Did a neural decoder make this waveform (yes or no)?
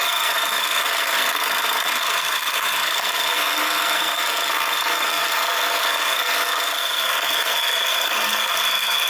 yes